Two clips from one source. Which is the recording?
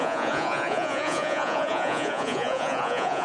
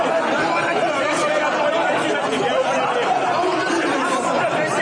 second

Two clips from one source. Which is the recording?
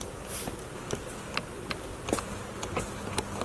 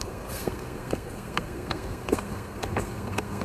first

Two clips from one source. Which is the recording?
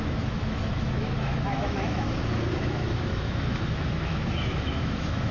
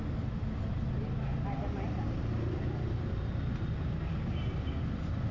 second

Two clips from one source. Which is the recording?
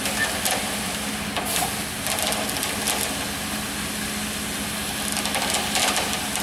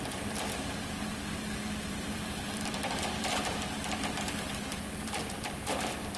first